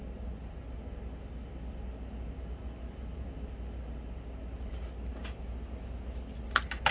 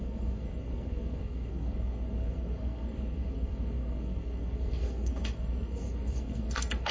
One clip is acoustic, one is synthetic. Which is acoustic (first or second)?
first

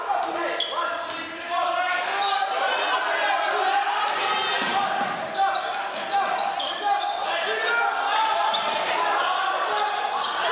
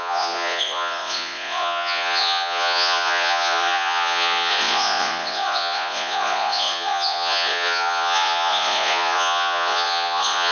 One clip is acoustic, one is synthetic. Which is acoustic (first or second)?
first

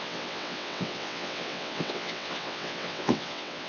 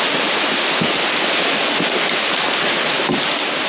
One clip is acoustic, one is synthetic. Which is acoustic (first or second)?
second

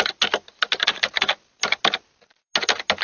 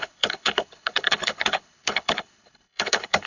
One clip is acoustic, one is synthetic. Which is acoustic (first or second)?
first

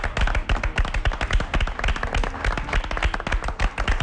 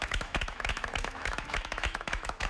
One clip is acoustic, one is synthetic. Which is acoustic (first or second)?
first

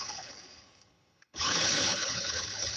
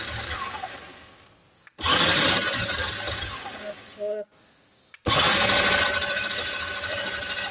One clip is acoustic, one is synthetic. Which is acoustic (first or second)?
second